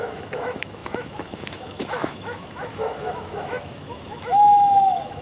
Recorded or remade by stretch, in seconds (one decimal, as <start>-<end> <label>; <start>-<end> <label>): 0.0-5.2 remade